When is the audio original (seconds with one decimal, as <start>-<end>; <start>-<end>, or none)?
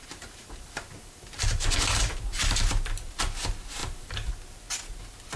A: 3.2-3.8; 4.3-5.4